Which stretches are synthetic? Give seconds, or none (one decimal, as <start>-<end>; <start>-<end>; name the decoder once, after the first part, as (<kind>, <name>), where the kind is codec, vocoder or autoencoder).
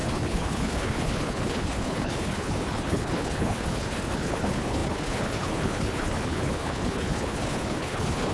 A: 0.0-8.3 (codec, HILCodec)